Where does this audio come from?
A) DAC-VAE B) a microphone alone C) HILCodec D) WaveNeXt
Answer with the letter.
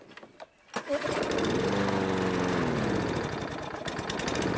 B